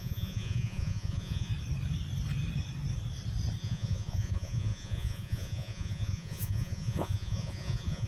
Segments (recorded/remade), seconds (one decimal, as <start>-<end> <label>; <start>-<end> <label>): 0.0-1.5 remade; 1.5-3.6 recorded; 3.6-8.1 remade